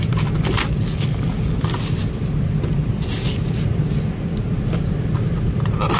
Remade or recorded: recorded